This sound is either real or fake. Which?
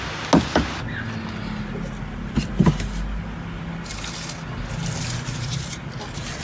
real